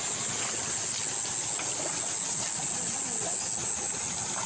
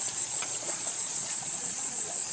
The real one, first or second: first